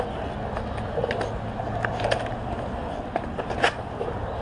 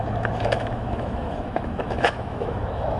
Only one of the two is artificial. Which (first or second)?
second